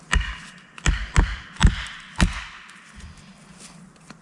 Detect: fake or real real